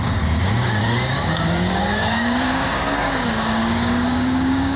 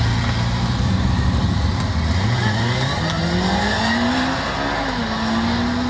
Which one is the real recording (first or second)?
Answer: second